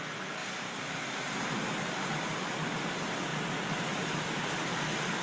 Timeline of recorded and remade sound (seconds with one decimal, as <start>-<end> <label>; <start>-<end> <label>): 0.0-0.4 recorded; 0.4-2.9 remade; 2.9-5.2 recorded